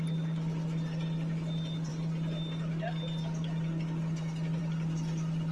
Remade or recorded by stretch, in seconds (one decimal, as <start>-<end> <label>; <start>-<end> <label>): 0.0-5.5 recorded